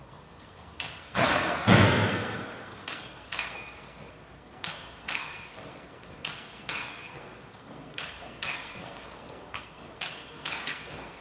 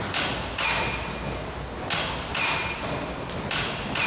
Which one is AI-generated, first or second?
first